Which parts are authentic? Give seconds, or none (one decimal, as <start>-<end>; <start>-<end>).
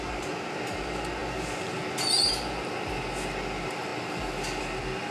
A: 0.0-5.1